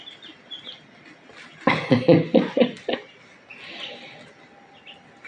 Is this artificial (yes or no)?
no